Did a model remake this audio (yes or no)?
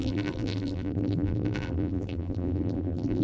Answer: yes